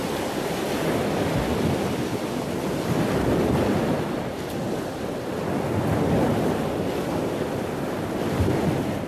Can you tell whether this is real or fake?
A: real